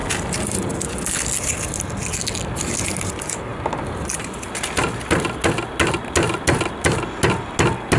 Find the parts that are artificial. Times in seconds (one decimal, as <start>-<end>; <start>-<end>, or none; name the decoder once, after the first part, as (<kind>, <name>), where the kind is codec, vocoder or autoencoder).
none

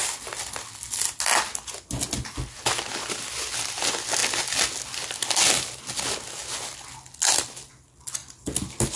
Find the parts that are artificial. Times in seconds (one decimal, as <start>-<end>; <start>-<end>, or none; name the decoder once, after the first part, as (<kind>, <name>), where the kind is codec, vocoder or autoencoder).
none

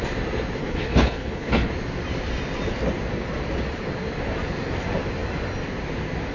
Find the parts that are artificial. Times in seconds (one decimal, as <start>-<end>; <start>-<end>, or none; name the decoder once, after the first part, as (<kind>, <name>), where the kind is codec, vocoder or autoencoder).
0.6-1.7 (codec, HILCodec)

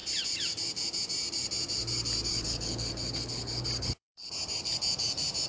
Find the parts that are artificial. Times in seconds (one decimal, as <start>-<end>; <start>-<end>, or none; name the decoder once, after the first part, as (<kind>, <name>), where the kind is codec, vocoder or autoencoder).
2.3-4.3 (codec, HILCodec)